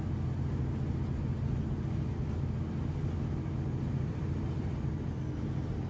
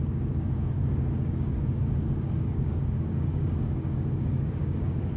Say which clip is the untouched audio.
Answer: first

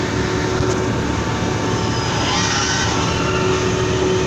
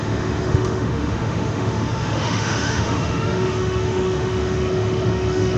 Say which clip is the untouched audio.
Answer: first